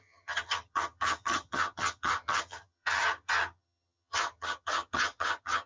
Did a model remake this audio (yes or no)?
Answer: yes